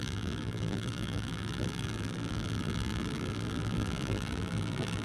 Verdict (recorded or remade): remade